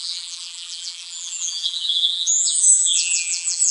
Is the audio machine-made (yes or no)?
yes